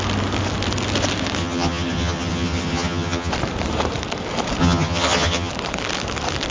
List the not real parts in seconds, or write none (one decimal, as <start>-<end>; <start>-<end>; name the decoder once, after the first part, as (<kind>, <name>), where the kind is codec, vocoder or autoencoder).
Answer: 1.4-3.3 (vocoder, HiFi-GAN); 4.6-5.5

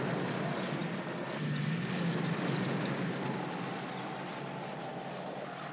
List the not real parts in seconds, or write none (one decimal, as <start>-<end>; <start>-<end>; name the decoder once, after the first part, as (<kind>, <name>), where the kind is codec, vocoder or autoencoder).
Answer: none

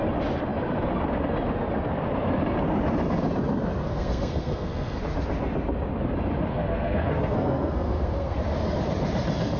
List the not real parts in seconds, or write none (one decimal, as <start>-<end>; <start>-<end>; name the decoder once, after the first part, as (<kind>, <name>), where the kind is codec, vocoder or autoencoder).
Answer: 3.8-5.0 (codec, SNAC); 6.5-8.4

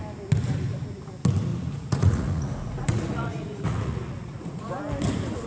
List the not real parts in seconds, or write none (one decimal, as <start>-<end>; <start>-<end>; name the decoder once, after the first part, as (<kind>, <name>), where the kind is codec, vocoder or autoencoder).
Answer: 1.5-4.8 (vocoder, Vocos)

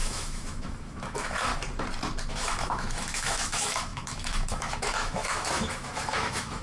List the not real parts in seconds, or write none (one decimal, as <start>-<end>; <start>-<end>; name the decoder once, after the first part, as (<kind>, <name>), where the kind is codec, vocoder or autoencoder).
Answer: 0.0-1.5 (autoencoder, DAC-VAE); 2.3-6.6

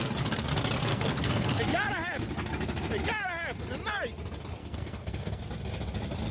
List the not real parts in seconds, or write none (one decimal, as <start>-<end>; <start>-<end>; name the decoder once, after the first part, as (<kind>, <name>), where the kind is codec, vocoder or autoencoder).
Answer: 0.9-1.6 (codec, SNAC); 4.6-5.4